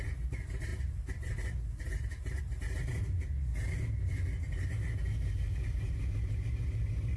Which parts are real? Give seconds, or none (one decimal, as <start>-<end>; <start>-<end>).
3.5-4.7